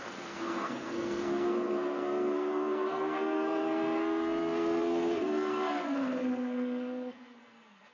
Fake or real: fake